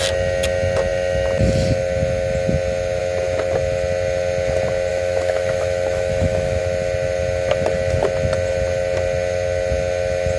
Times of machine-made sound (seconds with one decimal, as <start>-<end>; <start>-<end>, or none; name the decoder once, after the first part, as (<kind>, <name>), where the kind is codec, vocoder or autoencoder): 4.9-6.6 (autoencoder, DAC-VAE)